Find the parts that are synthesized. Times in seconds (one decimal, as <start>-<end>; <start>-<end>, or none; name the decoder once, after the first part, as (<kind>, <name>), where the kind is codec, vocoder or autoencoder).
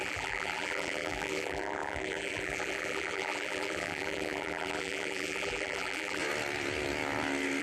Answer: 0.0-6.2 (vocoder, BigVGAN v2)